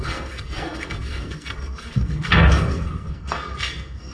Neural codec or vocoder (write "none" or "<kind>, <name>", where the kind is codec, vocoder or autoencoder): codec, SNAC